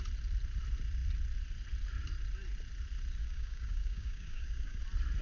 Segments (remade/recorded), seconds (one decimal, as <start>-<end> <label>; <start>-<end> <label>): 0.0-3.2 recorded; 3.2-4.8 remade; 4.8-5.2 recorded